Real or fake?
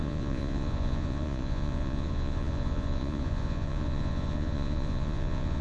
fake